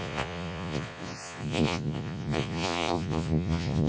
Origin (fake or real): fake